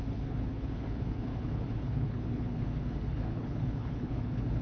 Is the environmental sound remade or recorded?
remade